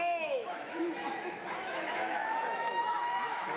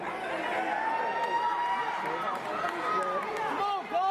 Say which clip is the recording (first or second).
second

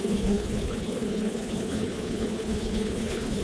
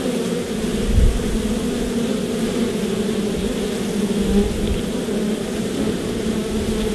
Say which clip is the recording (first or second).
second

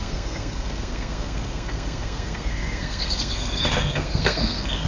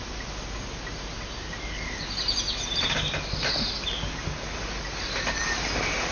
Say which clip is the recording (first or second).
second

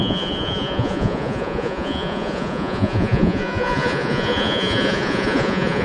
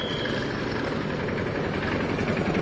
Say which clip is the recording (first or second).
second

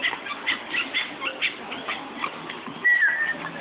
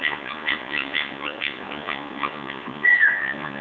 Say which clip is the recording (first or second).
first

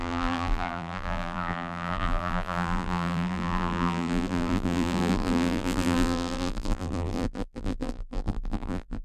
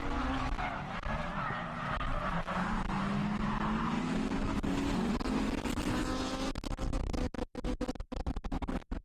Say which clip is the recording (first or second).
second